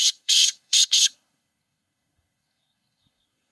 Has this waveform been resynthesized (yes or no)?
yes